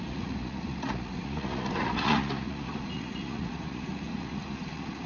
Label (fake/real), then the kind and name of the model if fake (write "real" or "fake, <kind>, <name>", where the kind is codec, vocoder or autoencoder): fake, vocoder, Vocos